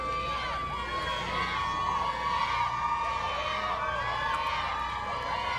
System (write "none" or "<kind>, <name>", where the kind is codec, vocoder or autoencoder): none